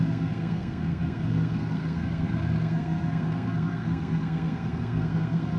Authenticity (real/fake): fake